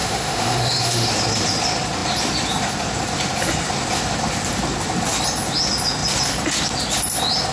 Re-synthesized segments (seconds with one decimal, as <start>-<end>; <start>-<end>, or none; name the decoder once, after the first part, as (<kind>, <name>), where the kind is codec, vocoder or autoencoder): 0.0-1.1 (autoencoder, DAC-VAE)

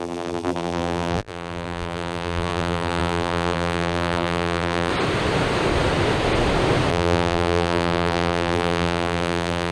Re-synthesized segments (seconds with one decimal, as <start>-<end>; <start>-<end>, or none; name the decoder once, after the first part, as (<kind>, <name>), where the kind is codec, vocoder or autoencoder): 0.0-4.9 (vocoder, BigVGAN v2); 6.9-9.7

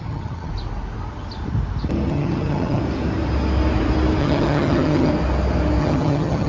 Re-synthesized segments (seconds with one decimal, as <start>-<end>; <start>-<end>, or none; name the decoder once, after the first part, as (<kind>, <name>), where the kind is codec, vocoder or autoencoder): 0.0-0.5 (vocoder, HiFi-GAN); 2.1-2.8; 4.2-5.1; 5.8-6.5

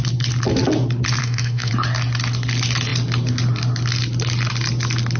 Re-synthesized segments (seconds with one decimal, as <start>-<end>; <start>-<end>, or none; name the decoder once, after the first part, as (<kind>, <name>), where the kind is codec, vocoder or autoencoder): 1.2-1.7 (autoencoder, DAC-VAE)